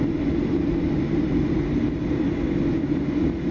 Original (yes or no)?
yes